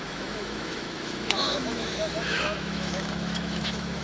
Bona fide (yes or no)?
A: no